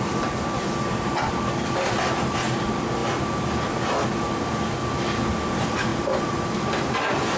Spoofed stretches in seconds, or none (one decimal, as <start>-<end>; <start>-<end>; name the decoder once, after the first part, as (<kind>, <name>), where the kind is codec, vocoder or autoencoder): none